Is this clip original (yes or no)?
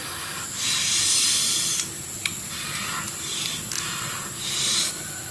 yes